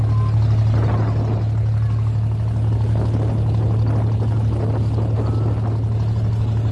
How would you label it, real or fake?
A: real